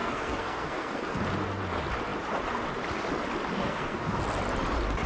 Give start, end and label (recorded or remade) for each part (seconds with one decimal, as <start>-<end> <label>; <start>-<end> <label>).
0.0-1.2 remade; 1.2-3.6 recorded; 3.6-4.2 remade; 4.2-5.1 recorded